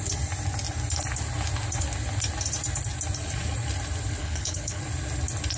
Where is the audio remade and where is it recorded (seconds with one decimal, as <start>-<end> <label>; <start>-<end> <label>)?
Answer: 0.0-4.2 recorded; 4.2-4.8 remade; 4.8-5.6 recorded